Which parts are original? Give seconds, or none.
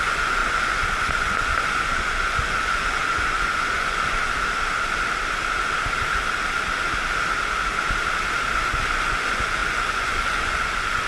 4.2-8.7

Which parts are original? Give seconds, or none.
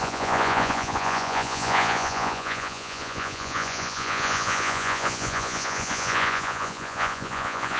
none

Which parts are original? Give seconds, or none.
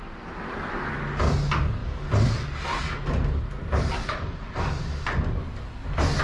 0.0-3.6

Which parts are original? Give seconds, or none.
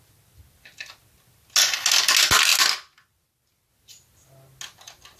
0.0-5.2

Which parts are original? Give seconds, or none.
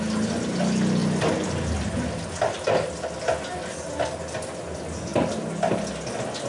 0.0-6.5